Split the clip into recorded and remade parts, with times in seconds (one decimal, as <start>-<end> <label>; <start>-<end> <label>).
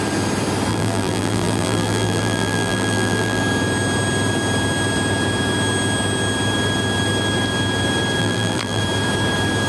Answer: 0.0-0.7 recorded; 0.7-3.4 remade; 3.4-8.2 recorded; 8.2-8.8 remade; 8.8-9.7 recorded